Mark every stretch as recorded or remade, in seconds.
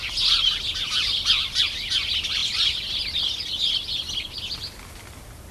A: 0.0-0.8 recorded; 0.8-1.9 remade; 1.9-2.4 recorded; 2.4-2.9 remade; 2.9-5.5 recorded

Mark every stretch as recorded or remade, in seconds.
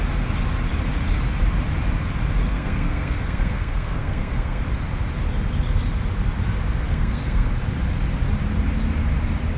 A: 0.0-2.4 recorded; 2.4-4.6 remade; 4.6-6.9 recorded; 6.9-7.5 remade; 7.5-9.6 recorded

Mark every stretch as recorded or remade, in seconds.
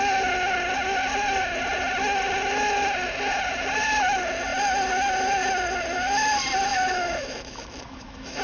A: 0.0-6.7 recorded; 6.7-8.4 remade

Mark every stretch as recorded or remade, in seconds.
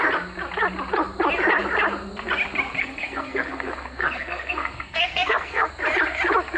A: 0.0-2.8 recorded; 2.8-5.7 remade; 5.7-6.6 recorded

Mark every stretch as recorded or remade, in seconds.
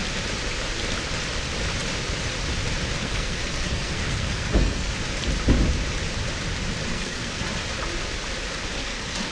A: 0.0-3.0 recorded; 3.0-4.9 remade; 4.9-6.9 recorded; 6.9-7.4 remade; 7.4-8.8 recorded; 8.8-9.3 remade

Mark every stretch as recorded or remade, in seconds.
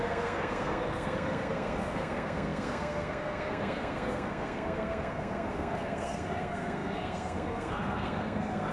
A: 0.0-8.7 remade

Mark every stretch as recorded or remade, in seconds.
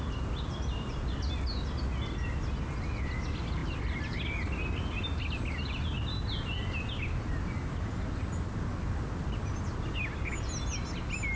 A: 0.0-11.4 recorded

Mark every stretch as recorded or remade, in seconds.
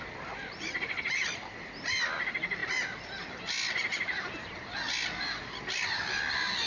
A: 0.0-6.7 remade